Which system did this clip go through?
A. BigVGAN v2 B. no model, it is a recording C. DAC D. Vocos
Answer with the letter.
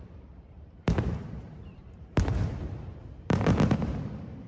A